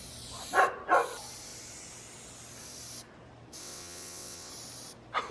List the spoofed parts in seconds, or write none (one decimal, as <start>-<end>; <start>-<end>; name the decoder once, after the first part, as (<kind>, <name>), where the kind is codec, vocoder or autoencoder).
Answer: 3.6-4.5 (vocoder, WaveNeXt)